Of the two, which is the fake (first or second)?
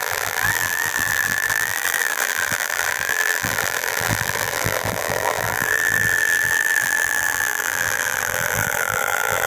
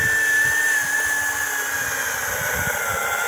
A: first